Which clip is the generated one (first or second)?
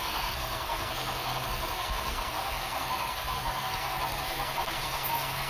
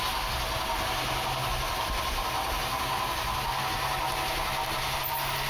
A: first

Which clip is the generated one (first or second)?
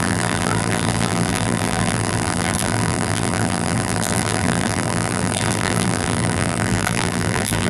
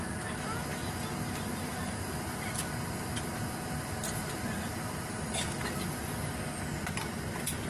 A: first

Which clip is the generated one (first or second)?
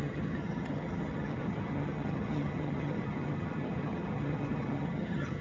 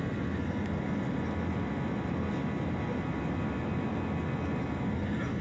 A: first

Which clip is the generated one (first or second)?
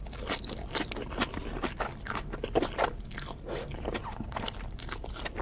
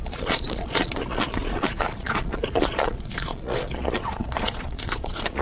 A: second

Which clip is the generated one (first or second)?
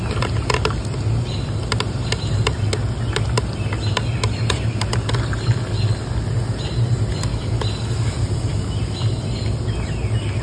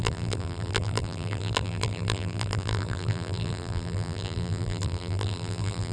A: second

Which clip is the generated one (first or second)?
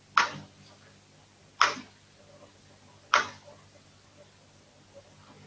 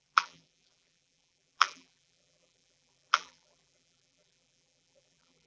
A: second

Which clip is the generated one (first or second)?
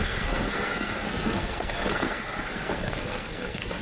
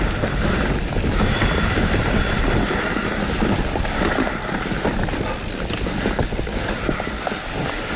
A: first